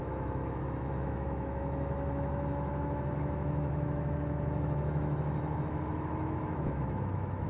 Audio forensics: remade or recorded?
remade